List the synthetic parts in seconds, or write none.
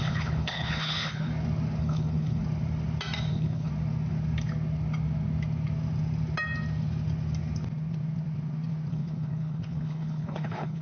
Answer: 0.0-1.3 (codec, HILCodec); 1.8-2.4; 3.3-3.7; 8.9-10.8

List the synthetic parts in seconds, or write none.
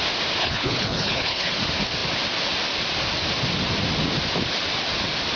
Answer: 0.4-1.5 (codec, HILCodec)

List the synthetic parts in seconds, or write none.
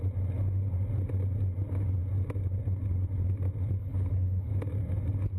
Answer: 3.8-4.5 (codec, HILCodec)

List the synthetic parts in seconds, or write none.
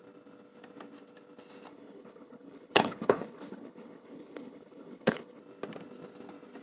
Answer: 1.7-5.4 (codec, HILCodec)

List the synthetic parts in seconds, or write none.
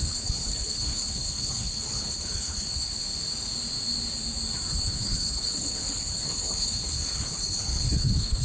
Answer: 0.0-3.0 (codec, HILCodec); 4.7-8.4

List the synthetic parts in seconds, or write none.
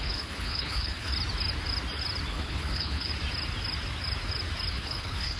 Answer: 0.0-1.1 (codec, HILCodec); 2.3-3.1; 4.7-5.4